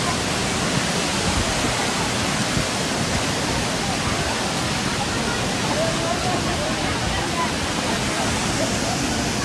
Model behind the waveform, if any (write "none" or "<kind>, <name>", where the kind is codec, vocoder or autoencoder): none